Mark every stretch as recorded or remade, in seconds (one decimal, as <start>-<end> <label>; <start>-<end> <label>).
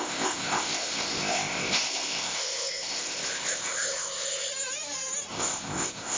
0.0-4.5 remade; 4.5-5.3 recorded; 5.3-6.2 remade